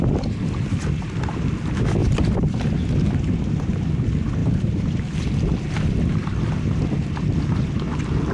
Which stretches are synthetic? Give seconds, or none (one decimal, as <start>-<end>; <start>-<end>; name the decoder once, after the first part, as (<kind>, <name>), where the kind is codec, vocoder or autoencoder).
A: 2.0-2.6 (vocoder, BigVGAN v2); 4.4-5.0